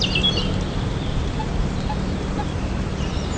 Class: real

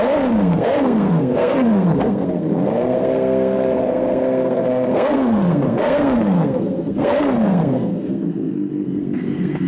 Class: fake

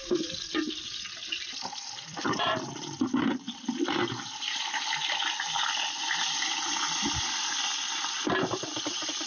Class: fake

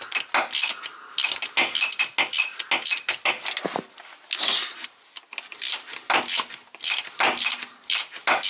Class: real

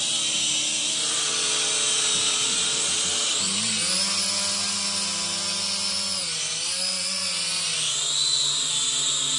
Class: real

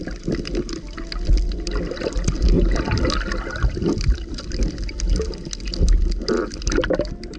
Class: real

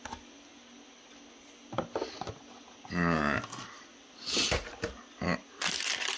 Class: real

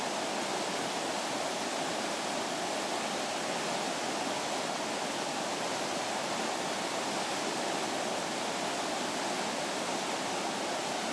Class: real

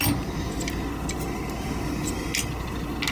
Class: real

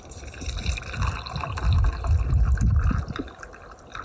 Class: real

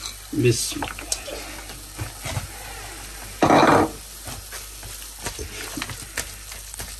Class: real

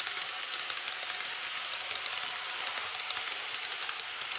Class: real